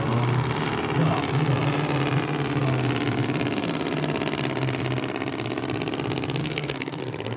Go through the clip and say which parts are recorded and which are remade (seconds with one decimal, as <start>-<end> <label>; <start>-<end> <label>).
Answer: 0.0-6.4 recorded; 6.4-7.0 remade; 7.0-7.4 recorded